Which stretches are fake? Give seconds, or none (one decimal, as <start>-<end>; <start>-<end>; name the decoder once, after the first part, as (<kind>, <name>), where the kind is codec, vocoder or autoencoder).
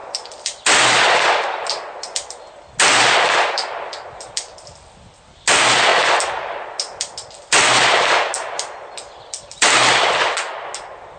none